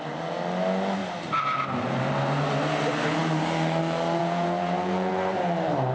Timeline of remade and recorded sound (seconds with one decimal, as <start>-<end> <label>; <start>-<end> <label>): 0.0-4.2 recorded; 4.2-5.1 remade; 5.1-5.9 recorded